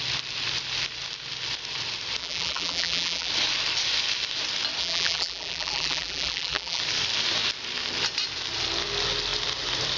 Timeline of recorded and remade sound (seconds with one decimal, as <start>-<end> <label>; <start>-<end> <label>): 0.0-2.2 recorded; 2.2-3.3 remade; 3.3-4.8 recorded; 4.8-6.8 remade; 6.8-10.0 recorded